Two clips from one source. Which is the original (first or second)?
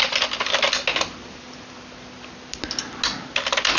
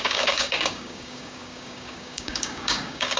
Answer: first